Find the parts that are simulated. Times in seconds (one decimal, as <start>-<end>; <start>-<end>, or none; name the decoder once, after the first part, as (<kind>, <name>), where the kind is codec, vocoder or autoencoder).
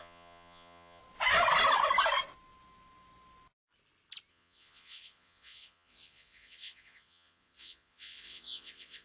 0.0-1.0 (vocoder, Vocos); 4.3-9.0